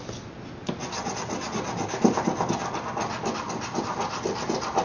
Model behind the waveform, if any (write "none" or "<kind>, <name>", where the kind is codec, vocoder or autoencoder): none